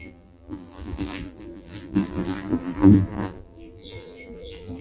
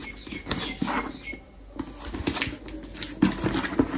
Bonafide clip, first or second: second